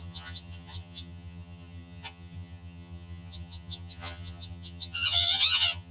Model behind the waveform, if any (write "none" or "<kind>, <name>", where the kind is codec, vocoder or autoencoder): vocoder, HiFi-GAN